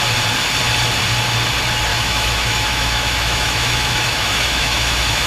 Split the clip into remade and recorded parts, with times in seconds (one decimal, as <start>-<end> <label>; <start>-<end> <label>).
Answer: 0.0-1.9 recorded; 1.9-5.3 remade